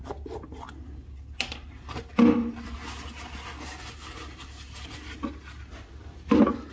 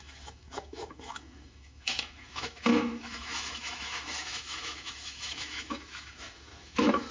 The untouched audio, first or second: first